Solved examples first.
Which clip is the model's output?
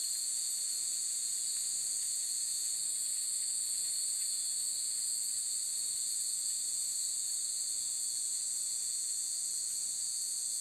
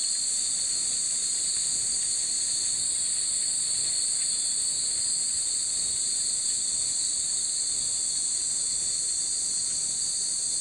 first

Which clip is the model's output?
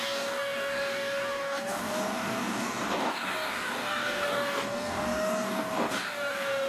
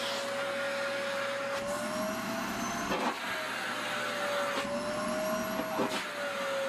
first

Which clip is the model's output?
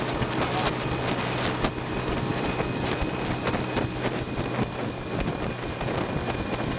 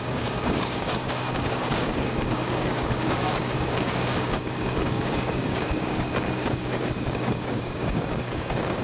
second